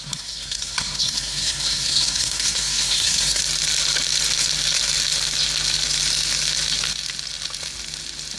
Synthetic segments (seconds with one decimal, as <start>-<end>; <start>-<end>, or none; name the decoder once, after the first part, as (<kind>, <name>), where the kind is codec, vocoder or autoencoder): 0.0-3.4 (codec, SNAC)